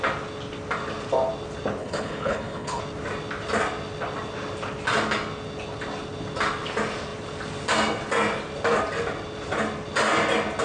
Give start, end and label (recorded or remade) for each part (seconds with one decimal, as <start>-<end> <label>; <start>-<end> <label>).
0.0-1.8 recorded; 1.8-2.8 remade; 2.8-10.6 recorded